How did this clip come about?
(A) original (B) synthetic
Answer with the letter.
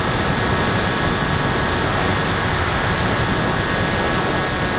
A